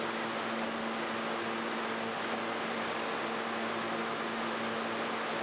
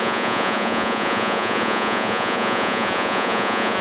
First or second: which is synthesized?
second